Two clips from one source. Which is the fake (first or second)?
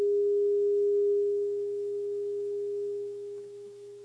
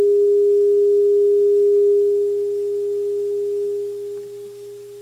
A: first